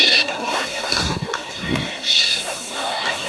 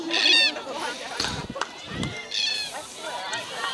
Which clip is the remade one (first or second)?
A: first